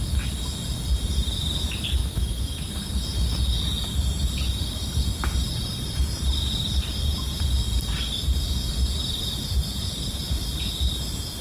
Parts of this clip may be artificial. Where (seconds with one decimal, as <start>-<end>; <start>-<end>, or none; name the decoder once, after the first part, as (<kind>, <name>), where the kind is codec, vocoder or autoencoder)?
2.0-2.7 (autoencoder, DAC-VAE)